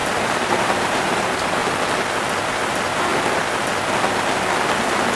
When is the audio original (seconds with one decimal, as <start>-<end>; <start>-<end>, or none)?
1.6-2.3; 3.1-5.2